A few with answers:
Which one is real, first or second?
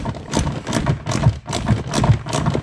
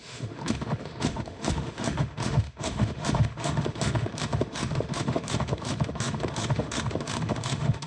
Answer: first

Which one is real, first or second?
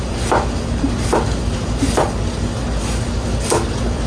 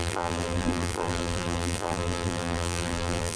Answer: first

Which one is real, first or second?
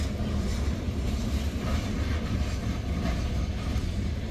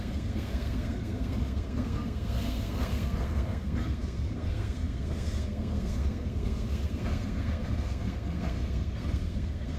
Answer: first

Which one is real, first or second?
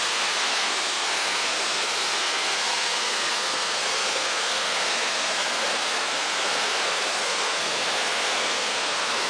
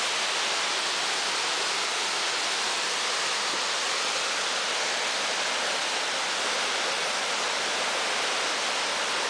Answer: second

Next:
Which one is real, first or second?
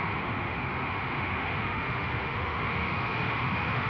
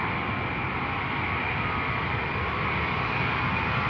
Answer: second